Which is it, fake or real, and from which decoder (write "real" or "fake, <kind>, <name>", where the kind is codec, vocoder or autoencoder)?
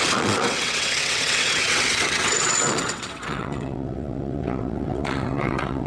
fake, vocoder, WaveNeXt